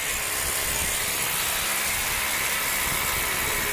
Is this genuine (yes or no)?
yes